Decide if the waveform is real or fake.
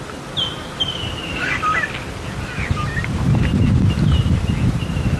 real